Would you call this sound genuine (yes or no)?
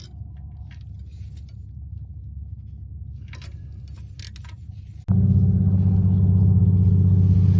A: yes